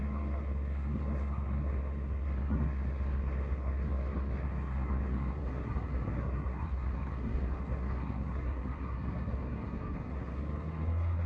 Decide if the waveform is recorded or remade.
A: remade